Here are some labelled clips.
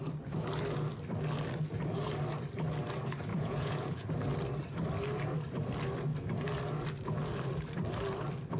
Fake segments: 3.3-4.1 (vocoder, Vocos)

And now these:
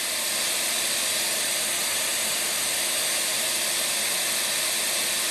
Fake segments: none